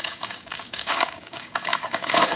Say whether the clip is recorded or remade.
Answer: remade